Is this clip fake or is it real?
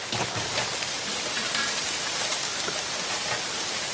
real